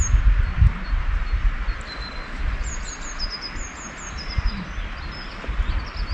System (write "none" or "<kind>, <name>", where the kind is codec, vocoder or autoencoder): none